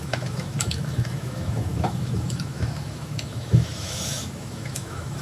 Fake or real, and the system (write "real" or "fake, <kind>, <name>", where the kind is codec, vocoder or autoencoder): fake, autoencoder, DAC-VAE